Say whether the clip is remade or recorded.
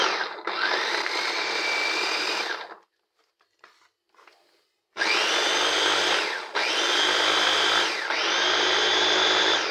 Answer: recorded